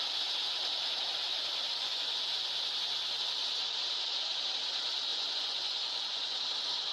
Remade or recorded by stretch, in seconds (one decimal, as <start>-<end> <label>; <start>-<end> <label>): 0.0-1.8 recorded; 1.8-2.3 remade; 2.3-5.1 recorded; 5.1-6.4 remade; 6.4-6.9 recorded